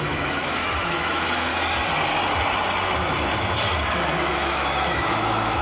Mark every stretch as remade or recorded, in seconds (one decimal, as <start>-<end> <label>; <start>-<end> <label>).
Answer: 0.0-1.5 remade; 1.5-4.3 recorded; 4.3-5.6 remade